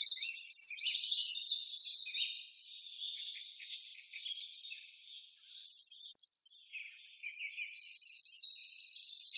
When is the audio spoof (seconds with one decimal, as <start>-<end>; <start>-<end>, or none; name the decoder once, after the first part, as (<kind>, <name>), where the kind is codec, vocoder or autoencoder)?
none

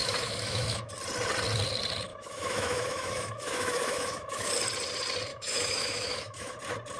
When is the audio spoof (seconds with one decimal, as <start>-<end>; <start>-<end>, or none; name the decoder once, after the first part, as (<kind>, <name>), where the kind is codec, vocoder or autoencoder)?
0.0-0.9 (autoencoder, DAC-VAE); 2.1-4.5; 5.3-6.6

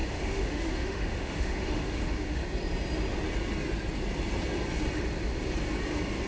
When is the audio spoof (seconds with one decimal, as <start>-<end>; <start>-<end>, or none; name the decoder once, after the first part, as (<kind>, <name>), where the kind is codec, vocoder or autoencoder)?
0.0-2.4 (autoencoder, DAC-VAE)

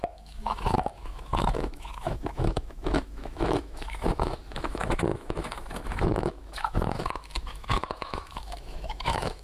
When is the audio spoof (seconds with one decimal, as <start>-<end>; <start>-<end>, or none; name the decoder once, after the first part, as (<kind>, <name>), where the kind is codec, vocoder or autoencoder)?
0.0-9.4 (autoencoder, DAC-VAE)